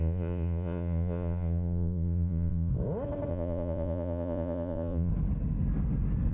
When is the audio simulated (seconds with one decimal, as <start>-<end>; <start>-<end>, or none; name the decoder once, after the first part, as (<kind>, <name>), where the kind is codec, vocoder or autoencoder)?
0.0-2.7 (vocoder, Vocos); 3.3-5.1